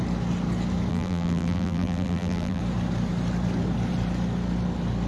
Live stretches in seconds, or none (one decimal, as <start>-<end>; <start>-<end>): 0.0-0.9; 2.6-5.1